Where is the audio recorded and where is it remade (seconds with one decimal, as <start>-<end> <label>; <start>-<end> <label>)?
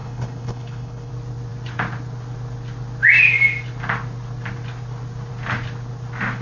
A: 0.0-1.1 remade; 1.1-6.4 recorded